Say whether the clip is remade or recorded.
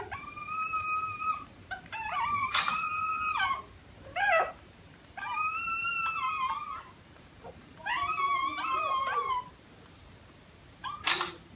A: remade